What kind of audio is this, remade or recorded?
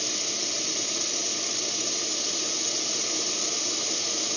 recorded